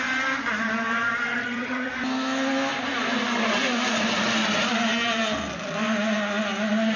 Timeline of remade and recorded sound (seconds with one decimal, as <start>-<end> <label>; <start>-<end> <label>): 0.0-1.3 recorded; 1.3-1.9 remade; 1.9-7.0 recorded